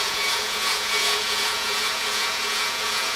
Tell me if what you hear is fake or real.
fake